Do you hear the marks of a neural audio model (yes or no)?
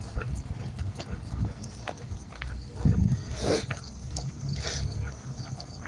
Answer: yes